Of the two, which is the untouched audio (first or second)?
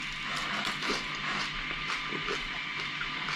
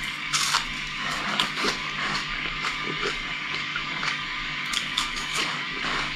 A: first